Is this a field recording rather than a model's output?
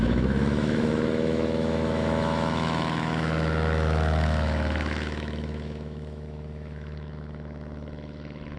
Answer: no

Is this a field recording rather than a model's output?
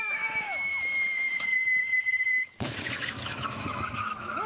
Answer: no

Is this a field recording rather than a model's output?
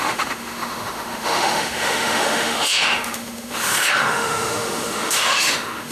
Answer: no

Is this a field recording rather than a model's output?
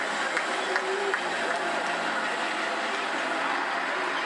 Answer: yes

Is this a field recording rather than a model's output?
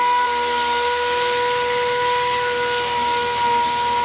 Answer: yes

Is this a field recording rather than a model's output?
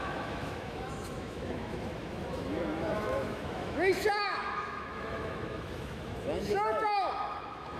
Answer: no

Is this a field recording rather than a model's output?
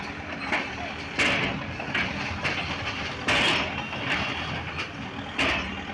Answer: yes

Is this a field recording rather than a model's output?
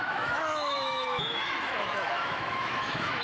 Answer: no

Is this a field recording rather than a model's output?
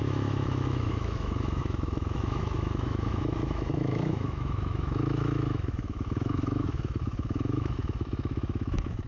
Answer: no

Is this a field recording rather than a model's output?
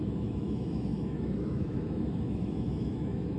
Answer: no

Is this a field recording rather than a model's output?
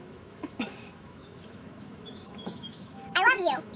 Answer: no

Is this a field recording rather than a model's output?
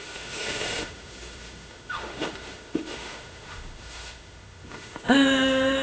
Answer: no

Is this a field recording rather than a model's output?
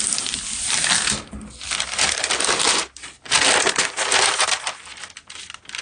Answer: yes